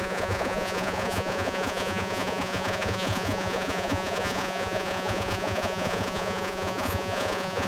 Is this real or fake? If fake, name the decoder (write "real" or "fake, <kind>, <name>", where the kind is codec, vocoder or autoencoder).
fake, vocoder, Vocos